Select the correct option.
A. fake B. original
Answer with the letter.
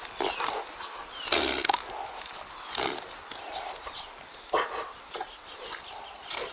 B